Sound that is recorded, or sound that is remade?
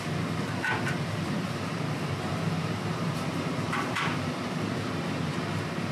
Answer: remade